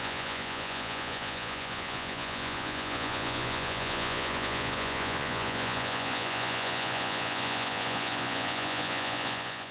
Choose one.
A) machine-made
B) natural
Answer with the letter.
A